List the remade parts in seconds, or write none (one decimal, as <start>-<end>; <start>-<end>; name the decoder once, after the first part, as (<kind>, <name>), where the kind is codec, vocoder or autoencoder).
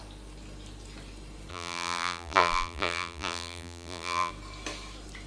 1.5-4.3 (vocoder, BigVGAN v2)